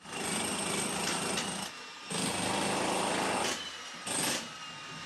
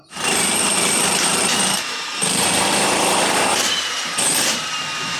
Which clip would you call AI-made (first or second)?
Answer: second